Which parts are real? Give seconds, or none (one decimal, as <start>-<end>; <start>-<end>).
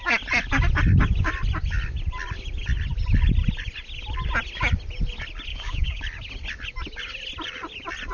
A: 0.0-5.5; 6.0-8.1